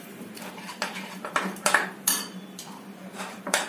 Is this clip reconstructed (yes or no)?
yes